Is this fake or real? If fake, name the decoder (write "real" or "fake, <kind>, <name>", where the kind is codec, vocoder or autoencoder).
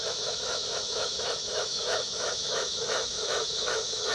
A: fake, autoencoder, DAC-VAE